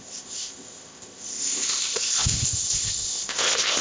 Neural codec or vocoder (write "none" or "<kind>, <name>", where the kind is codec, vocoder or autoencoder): codec, ZipCodec